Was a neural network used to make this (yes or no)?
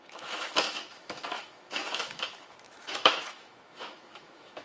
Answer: yes